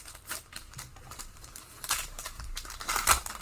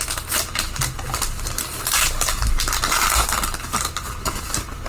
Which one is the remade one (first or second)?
first